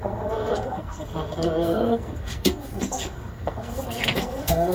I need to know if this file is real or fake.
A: fake